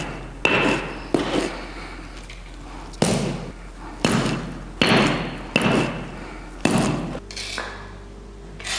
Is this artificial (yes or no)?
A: no